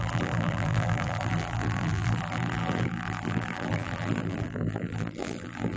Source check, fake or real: fake